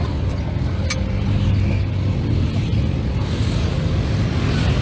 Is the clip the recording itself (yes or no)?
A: yes